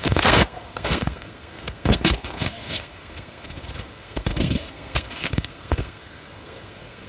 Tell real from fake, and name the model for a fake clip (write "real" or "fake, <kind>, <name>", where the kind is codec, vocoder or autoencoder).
fake, codec, SNAC